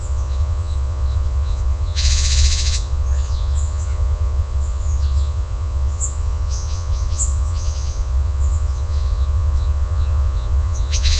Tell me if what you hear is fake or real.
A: fake